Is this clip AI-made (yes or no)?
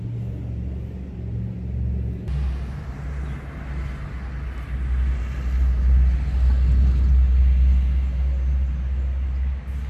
no